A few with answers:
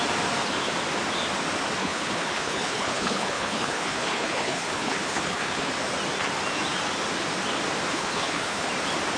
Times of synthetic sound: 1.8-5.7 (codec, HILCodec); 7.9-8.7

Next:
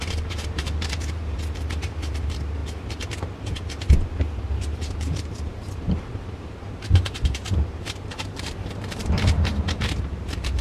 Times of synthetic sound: 0.0-2.6 (vocoder, BigVGAN v2); 4.5-10.6